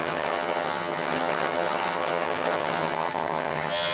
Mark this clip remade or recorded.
remade